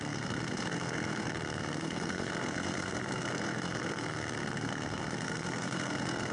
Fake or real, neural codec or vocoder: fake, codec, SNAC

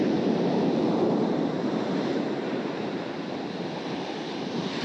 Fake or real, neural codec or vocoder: fake, vocoder, BigVGAN v2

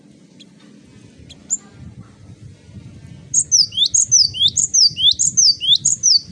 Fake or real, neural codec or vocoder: real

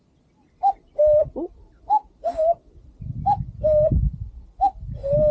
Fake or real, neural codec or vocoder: real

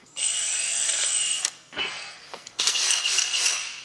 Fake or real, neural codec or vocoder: fake, codec, SNAC